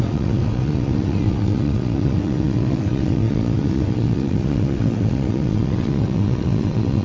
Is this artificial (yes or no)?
yes